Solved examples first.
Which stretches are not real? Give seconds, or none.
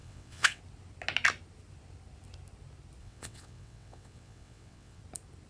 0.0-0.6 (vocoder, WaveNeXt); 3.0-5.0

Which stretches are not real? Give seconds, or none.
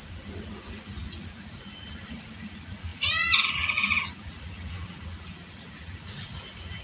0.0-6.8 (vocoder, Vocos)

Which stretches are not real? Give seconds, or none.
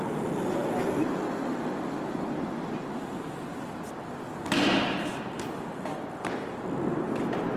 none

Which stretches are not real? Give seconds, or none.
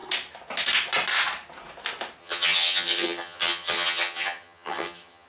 2.2-5.3 (vocoder, HiFi-GAN)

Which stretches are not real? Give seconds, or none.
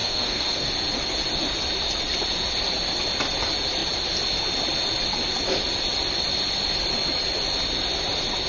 0.0-0.7 (codec, SNAC)